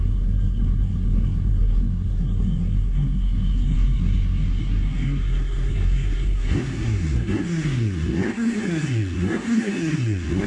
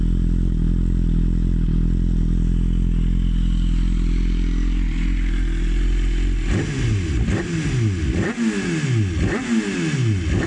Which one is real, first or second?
second